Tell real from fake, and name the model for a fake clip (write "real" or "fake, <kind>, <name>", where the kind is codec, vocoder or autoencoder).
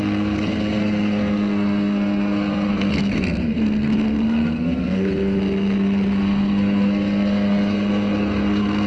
fake, codec, SNAC